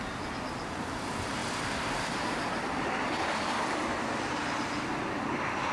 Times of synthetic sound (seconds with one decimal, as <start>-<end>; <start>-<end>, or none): none